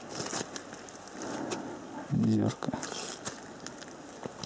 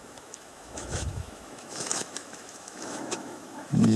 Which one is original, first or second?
first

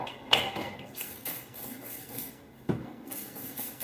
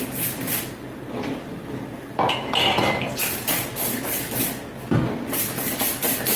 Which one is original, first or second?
second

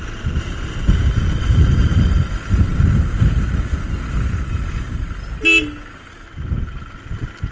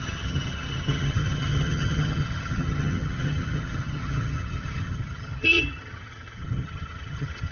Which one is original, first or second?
first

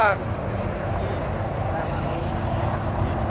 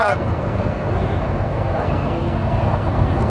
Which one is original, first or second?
first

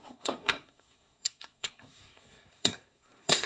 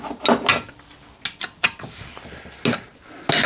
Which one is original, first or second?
second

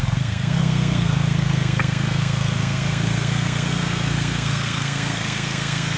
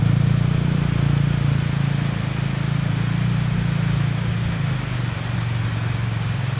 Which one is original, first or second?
second